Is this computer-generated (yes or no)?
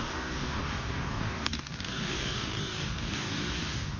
yes